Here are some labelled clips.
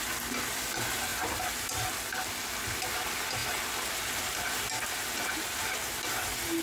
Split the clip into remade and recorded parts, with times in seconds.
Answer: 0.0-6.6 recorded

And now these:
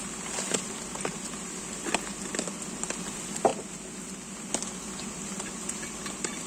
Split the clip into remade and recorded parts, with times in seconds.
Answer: 0.0-6.5 recorded

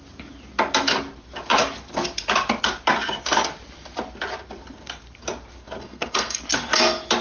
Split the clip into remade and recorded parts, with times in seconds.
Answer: 0.0-5.8 recorded; 5.8-6.4 remade; 6.4-7.2 recorded

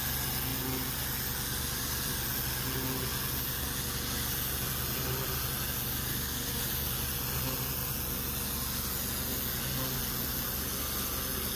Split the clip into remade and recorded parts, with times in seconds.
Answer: 0.0-6.1 recorded; 6.1-6.6 remade; 6.6-11.6 recorded

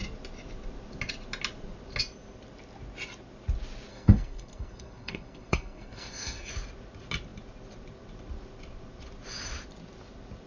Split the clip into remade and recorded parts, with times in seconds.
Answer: 0.0-3.9 recorded; 3.9-6.5 remade; 6.5-10.5 recorded

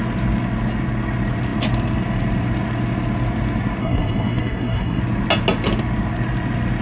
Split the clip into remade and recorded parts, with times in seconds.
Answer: 0.0-3.8 recorded; 3.8-5.0 remade; 5.0-6.8 recorded